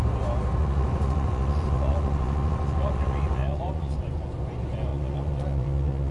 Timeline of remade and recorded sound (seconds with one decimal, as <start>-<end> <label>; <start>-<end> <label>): 0.0-0.6 recorded; 0.6-4.3 remade; 4.3-4.9 recorded; 4.9-6.1 remade